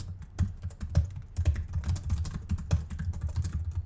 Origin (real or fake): real